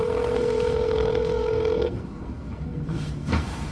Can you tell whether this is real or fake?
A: fake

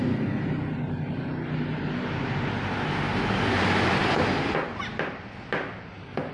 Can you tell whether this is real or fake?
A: real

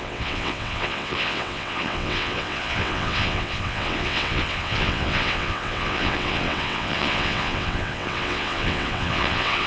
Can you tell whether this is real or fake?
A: fake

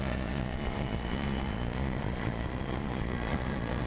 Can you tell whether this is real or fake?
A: fake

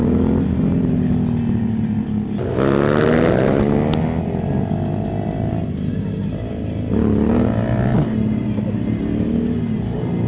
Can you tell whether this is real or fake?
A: real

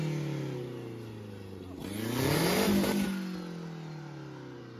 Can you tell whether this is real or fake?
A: real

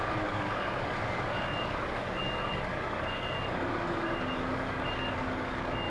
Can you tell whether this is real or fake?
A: fake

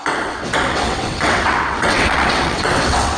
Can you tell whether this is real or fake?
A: fake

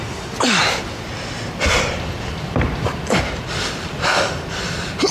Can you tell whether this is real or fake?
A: real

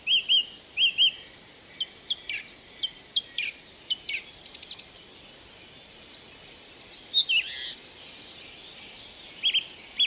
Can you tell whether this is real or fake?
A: real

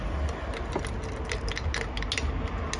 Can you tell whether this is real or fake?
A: real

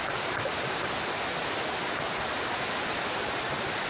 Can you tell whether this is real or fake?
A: real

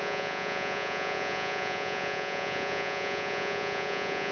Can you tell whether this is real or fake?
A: fake